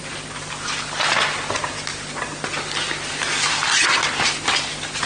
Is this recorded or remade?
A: recorded